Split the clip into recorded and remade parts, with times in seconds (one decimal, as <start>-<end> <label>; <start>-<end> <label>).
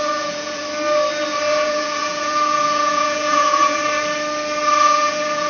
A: 0.0-0.6 remade; 0.6-1.5 recorded; 1.5-3.8 remade; 3.8-4.8 recorded; 4.8-5.5 remade